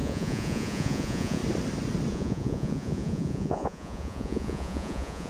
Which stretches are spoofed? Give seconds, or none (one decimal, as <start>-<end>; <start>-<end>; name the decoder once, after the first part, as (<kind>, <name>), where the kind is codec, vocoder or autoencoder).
0.0-1.4 (vocoder, Vocos); 2.1-5.3